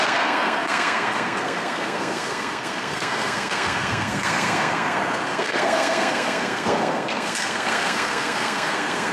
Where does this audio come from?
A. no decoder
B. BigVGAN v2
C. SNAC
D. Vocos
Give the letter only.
C